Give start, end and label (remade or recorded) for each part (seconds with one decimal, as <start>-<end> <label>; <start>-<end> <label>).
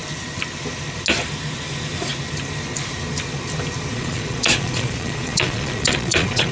0.0-3.9 recorded; 3.9-6.5 remade